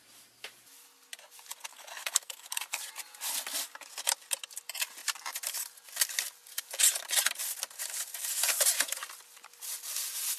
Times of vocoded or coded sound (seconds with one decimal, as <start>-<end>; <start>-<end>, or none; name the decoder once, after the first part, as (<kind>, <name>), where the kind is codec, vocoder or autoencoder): 1.7-2.8 (codec, SNAC)